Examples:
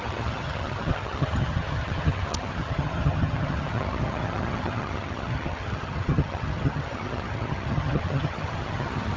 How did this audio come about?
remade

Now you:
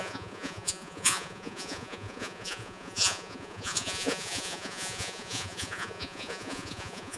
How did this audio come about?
remade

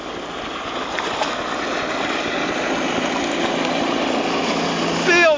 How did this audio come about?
recorded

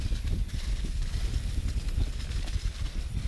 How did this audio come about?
recorded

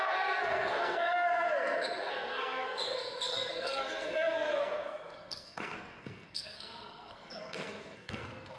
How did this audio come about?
remade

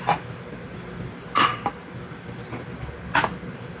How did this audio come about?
recorded